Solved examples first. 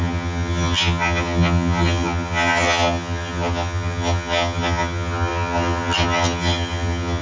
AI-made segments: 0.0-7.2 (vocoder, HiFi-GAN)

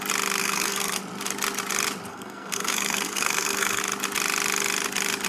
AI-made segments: 0.4-1.0 (codec, SNAC); 2.1-3.8

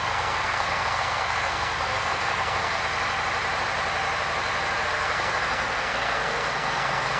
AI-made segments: 0.0-2.8 (codec, SNAC); 4.8-7.2

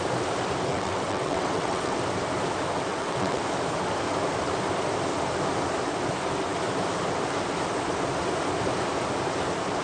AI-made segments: 0.7-2.0 (vocoder, WaveNeXt); 2.9-3.4

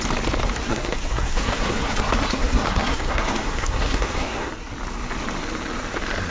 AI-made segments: 0.7-4.5 (codec, SNAC)